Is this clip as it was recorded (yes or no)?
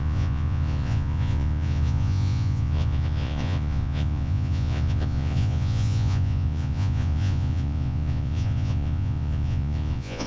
no